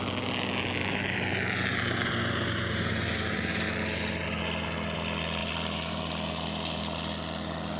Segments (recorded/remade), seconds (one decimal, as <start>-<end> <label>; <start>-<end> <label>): 0.0-0.8 recorded; 0.8-4.4 remade; 4.4-5.4 recorded; 5.4-6.0 remade; 6.0-7.8 recorded